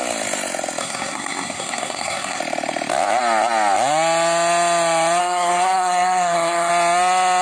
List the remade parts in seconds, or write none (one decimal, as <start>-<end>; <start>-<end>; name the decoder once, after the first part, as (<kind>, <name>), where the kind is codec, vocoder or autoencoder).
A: 0.8-2.4 (codec, SNAC); 5.2-6.7